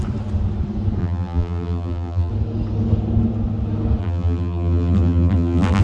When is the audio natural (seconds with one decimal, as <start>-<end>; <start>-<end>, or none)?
0.0-1.0; 2.3-4.0